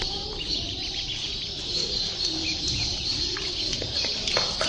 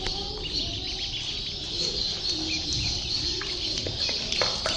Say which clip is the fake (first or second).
first